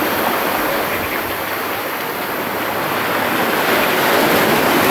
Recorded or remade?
recorded